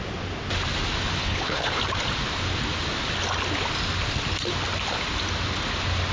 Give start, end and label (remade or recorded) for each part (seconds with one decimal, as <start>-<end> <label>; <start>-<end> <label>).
0.0-1.2 recorded; 1.2-1.8 remade; 1.8-6.1 recorded